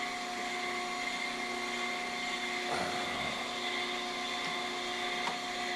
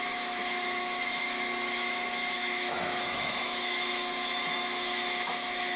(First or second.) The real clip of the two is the first